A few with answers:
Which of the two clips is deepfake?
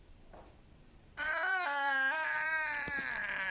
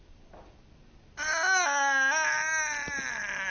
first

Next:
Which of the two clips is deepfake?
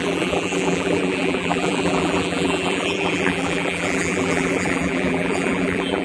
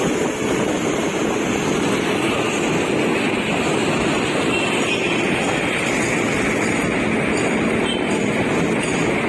first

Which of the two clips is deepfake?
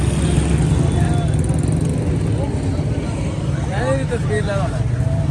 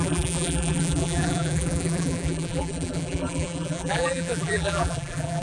second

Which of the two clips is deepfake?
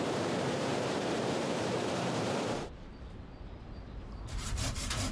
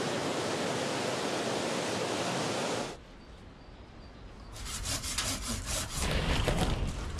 first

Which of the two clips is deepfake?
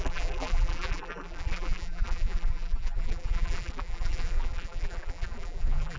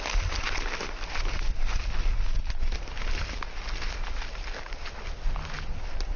first